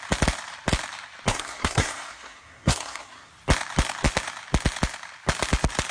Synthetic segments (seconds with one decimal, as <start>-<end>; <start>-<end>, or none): 1.3-3.3